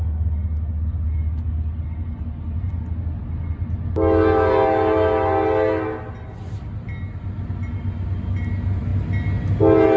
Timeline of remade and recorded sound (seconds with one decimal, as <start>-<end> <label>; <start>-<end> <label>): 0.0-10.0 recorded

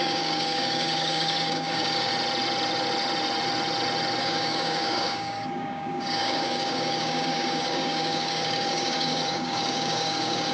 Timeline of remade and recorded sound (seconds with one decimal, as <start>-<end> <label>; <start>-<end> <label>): 0.0-2.1 remade; 2.1-4.2 recorded; 4.2-10.5 remade

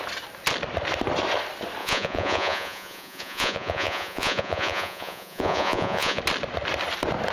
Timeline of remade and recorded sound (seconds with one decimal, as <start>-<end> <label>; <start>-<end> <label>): 0.0-1.8 recorded; 1.8-6.2 remade; 6.2-7.3 recorded

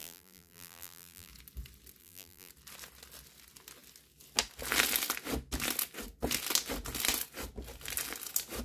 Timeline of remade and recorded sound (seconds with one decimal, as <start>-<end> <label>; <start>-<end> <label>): 0.0-1.3 remade; 1.3-2.0 recorded; 2.0-2.5 remade; 2.5-8.6 recorded

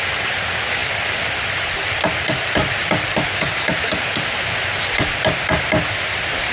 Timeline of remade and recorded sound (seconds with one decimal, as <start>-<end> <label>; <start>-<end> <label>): 0.0-6.5 recorded